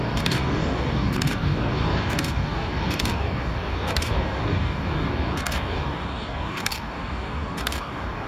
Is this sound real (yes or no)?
no